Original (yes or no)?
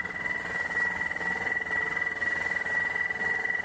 yes